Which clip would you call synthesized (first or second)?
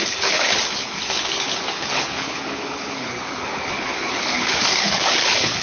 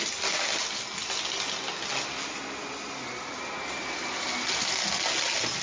first